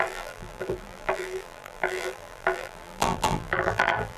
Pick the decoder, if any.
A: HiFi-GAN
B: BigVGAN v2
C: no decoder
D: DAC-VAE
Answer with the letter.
B